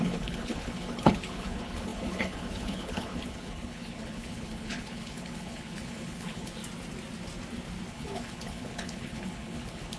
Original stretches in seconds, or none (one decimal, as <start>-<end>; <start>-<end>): 6.6-7.9